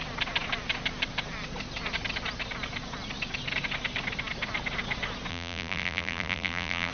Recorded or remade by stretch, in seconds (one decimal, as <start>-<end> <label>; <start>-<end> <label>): 0.0-5.3 recorded; 5.3-6.9 remade